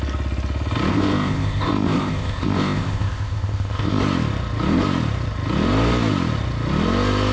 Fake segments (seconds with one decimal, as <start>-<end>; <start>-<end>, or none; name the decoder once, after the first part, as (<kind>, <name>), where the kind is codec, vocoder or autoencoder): 0.9-4.0 (codec, ZipCodec)